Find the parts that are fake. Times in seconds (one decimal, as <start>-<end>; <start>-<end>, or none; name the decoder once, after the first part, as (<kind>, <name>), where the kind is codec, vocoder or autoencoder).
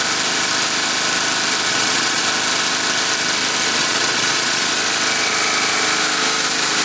1.7-2.2 (vocoder, Vocos); 3.8-4.7